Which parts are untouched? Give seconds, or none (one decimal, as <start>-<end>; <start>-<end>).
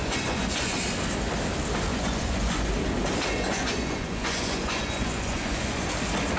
0.8-1.9; 2.7-3.3; 5.8-6.4